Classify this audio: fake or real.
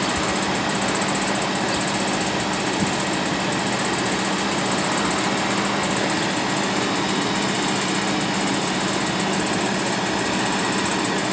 real